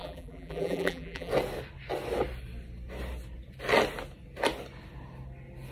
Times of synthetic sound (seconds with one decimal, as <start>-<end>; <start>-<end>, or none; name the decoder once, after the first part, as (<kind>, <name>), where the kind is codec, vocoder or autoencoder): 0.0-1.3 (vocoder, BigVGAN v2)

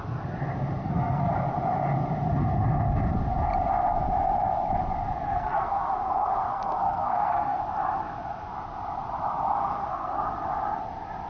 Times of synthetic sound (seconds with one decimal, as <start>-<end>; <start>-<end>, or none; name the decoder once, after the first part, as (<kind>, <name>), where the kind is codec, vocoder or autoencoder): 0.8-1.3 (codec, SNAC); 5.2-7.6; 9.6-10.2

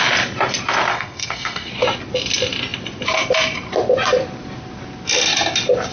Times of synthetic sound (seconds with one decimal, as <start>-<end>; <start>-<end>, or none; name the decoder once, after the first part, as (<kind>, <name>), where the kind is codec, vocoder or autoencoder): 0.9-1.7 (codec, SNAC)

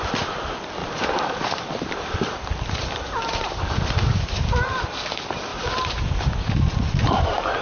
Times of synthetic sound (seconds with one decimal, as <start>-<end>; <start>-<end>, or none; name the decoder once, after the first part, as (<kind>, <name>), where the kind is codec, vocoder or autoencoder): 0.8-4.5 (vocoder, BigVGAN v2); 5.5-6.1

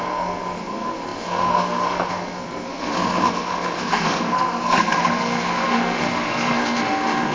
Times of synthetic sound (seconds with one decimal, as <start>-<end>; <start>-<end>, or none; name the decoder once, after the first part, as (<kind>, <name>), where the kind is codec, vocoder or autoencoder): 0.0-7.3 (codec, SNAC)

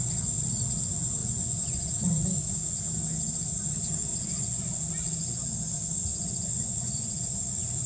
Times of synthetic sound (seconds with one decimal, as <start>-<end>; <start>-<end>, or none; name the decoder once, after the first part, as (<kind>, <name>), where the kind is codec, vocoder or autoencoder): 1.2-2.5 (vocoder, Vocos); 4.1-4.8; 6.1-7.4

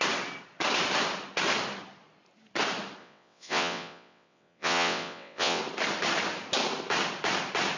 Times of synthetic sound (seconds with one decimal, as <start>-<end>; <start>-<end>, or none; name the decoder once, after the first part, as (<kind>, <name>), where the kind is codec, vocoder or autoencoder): 3.0-5.6 (vocoder, WaveNeXt)